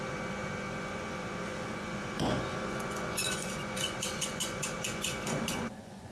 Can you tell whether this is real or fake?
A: fake